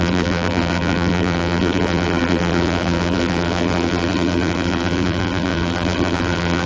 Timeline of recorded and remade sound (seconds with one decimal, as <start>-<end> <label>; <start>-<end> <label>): 0.0-6.7 remade